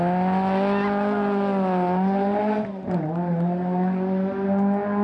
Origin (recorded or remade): recorded